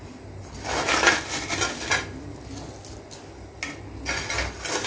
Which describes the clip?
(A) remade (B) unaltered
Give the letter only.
B